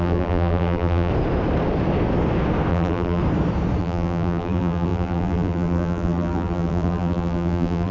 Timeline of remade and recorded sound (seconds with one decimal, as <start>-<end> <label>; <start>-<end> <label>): 0.0-1.1 remade; 1.1-2.7 recorded; 2.7-3.2 remade; 3.2-3.8 recorded; 3.8-7.9 remade